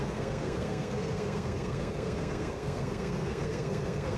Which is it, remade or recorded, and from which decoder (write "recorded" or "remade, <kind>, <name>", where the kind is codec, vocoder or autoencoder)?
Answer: remade, codec, SNAC